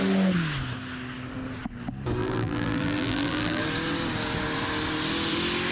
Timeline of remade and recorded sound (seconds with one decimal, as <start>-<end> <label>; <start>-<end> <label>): 0.0-2.2 recorded; 2.2-3.6 remade; 3.6-5.7 recorded

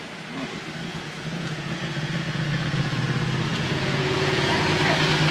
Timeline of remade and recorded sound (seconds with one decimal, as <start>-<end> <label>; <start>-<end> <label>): 0.0-0.9 recorded; 0.9-3.0 remade; 3.0-3.5 recorded; 3.5-4.8 remade; 4.8-5.3 recorded

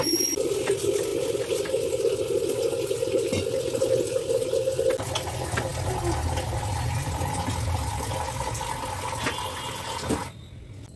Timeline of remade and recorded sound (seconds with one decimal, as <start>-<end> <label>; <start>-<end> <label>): 0.0-11.0 recorded

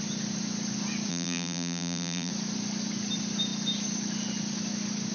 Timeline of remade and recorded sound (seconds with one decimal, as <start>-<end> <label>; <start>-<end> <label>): 0.0-1.1 recorded; 1.1-2.3 remade; 2.3-5.1 recorded

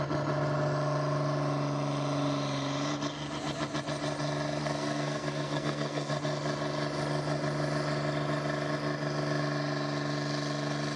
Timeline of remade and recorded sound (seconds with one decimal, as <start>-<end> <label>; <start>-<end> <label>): 0.0-4.6 recorded; 4.6-6.1 remade; 6.1-11.0 recorded

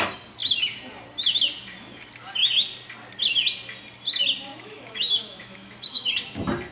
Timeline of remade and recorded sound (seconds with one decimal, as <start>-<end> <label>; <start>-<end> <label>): 0.0-4.5 recorded; 4.5-6.1 remade; 6.1-6.7 recorded